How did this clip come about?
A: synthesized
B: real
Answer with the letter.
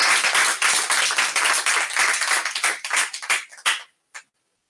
B